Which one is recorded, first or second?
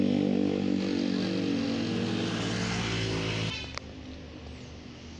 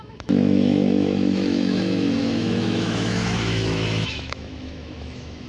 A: first